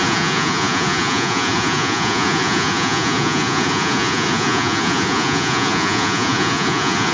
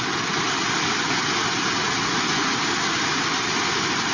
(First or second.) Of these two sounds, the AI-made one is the first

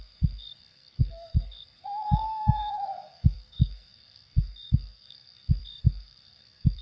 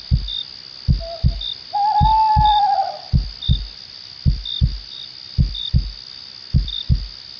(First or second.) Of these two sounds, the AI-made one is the first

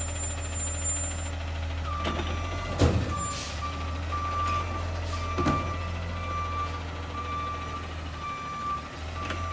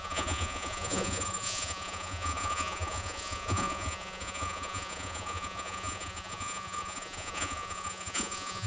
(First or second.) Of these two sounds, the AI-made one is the second